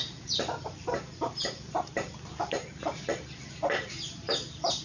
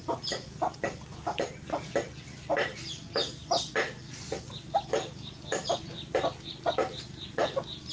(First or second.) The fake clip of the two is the first